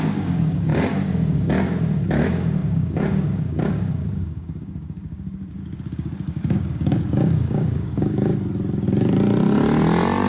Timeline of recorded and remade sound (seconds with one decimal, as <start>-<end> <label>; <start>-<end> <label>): 0.0-8.3 remade; 8.3-10.3 recorded